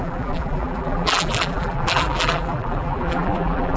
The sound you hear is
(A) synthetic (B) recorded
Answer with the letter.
A